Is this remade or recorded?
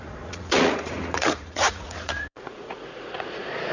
remade